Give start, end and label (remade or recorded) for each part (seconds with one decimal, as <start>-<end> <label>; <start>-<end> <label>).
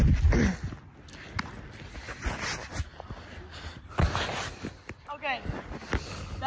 0.0-6.5 recorded